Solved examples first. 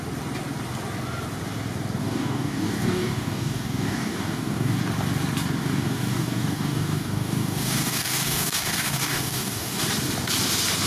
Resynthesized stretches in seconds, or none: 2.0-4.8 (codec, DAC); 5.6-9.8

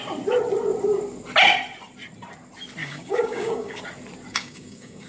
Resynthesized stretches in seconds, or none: 2.8-3.8 (codec, DAC); 4.3-5.1

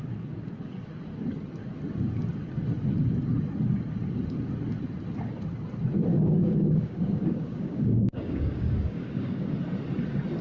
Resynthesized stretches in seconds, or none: 6.1-9.5 (codec, DAC)

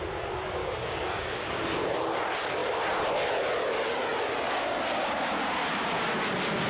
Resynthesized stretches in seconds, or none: 0.6-1.6 (codec, DAC)

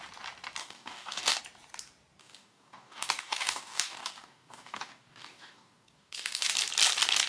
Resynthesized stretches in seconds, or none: 0.6-1.4 (codec, DAC); 2.2-6.5

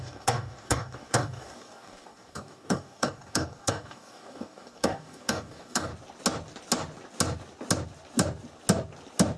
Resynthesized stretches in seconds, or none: 0.0-5.9 (codec, DAC)